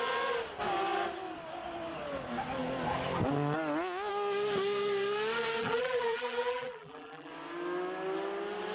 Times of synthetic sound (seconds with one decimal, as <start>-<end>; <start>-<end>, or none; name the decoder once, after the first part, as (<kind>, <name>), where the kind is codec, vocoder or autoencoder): 5.6-7.3 (vocoder, BigVGAN v2)

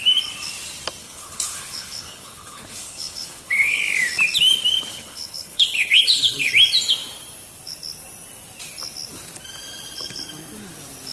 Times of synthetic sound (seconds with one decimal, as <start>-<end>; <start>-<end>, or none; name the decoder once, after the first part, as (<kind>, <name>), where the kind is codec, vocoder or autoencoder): 1.0-3.8 (codec, HILCodec); 4.9-6.5